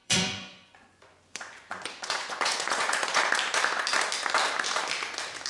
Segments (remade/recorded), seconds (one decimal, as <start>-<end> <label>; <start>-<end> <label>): 0.0-3.3 remade; 3.3-5.5 recorded